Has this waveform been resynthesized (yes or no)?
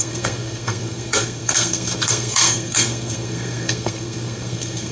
yes